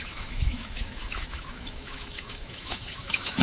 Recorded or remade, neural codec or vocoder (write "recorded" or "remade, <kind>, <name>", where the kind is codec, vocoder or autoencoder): remade, autoencoder, DAC-VAE